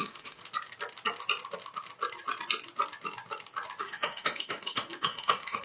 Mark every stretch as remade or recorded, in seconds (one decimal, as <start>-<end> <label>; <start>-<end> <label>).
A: 0.0-0.4 remade; 0.4-3.8 recorded; 3.8-5.6 remade